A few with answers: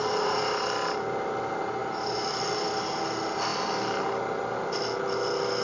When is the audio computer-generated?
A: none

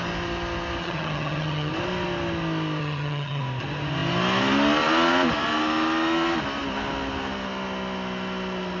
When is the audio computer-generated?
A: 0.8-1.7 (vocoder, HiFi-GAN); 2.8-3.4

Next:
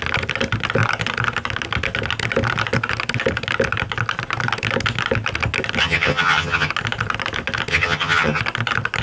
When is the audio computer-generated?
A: 5.8-6.7 (vocoder, HiFi-GAN); 7.7-8.4